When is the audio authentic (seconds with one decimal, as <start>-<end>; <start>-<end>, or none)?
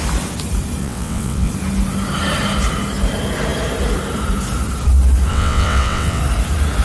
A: 0.0-0.8; 1.5-5.3; 6.2-6.8